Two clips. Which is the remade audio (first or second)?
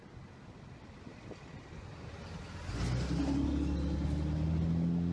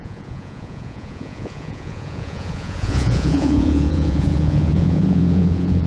second